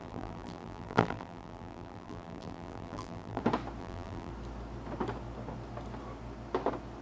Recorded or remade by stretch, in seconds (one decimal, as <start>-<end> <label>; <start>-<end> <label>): 0.0-3.4 remade; 3.4-3.8 recorded; 3.8-4.3 remade; 4.3-7.0 recorded